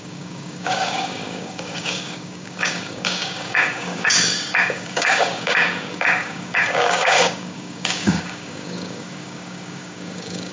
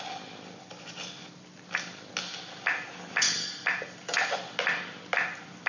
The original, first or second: second